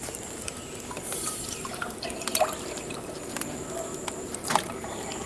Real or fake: fake